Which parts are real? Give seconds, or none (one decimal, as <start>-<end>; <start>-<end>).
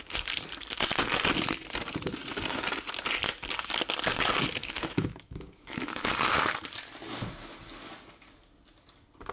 0.0-4.6; 6.0-9.3